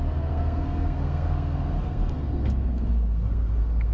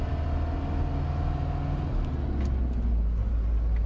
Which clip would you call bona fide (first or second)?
second